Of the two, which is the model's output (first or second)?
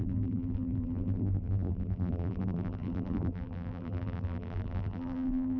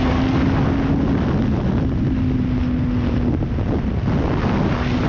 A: first